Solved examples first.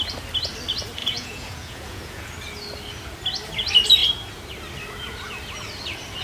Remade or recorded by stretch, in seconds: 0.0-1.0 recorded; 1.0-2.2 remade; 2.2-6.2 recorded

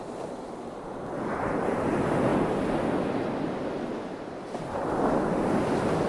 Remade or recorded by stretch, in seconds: 0.0-6.1 recorded

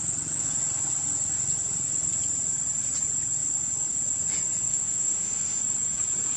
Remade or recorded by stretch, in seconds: 0.0-4.7 recorded; 4.7-5.6 remade; 5.6-6.4 recorded

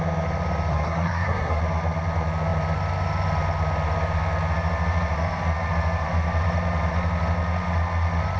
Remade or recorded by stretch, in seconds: 0.0-0.7 recorded; 0.7-1.6 remade; 1.6-8.4 recorded

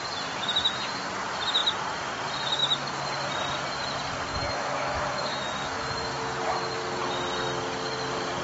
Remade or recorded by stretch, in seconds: 0.0-4.3 recorded; 4.3-6.1 remade; 6.1-8.4 recorded

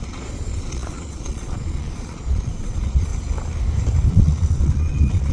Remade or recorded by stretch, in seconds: 0.0-3.1 remade; 3.1-4.1 recorded; 4.1-5.3 remade

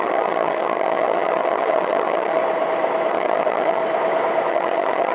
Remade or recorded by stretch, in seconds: 0.0-2.4 remade; 2.4-3.1 recorded; 3.1-3.8 remade; 3.8-4.5 recorded; 4.5-5.1 remade

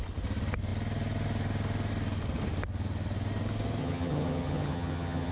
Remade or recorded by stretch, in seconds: 0.0-3.8 recorded; 3.8-5.3 remade